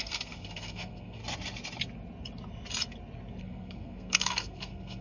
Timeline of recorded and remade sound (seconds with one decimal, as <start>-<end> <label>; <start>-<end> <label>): 0.0-1.2 remade; 1.2-3.4 recorded; 3.4-5.0 remade

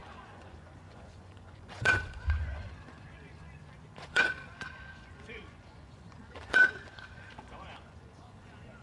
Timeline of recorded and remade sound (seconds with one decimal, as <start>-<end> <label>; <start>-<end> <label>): 0.0-8.8 remade